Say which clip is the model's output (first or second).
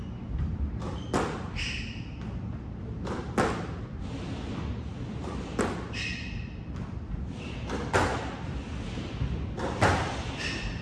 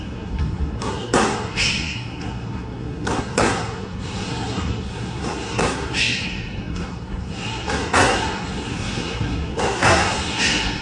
second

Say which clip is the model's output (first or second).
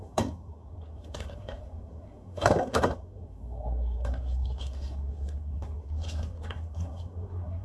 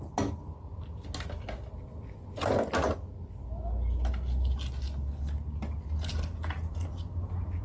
first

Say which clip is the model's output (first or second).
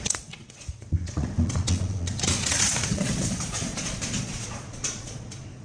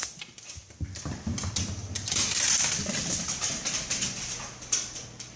first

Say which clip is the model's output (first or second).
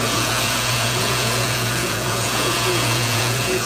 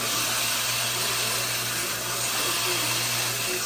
first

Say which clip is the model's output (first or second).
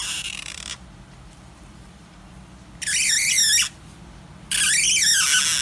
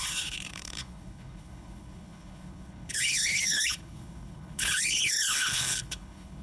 second